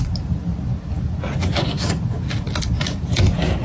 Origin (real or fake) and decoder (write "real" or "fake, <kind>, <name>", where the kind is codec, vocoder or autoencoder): real